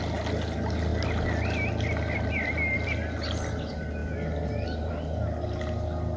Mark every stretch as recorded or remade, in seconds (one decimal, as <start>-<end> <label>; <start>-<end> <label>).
0.0-6.2 recorded